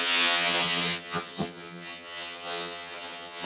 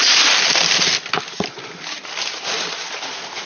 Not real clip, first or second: first